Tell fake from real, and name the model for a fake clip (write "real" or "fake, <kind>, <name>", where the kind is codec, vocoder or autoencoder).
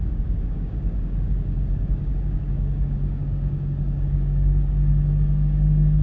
fake, codec, DAC